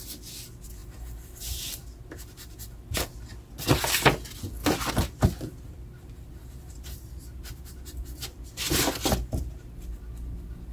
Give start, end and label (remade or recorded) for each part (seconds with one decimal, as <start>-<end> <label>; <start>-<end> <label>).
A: 0.0-10.7 recorded